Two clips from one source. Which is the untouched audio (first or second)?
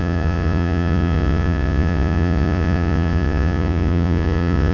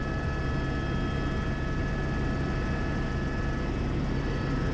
second